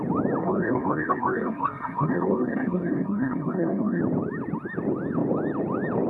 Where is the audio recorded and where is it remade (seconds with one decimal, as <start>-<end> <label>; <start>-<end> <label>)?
0.0-0.4 recorded; 0.4-4.0 remade; 4.0-6.1 recorded